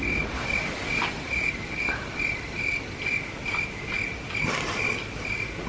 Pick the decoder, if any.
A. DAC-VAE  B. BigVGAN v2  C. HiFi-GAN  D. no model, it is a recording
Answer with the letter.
D